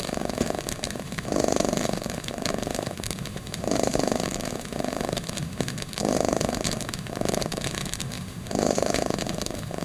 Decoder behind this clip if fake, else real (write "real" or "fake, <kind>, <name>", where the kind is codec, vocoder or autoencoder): fake, autoencoder, DAC-VAE